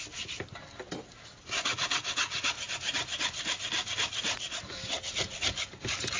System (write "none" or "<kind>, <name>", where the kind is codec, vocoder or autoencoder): none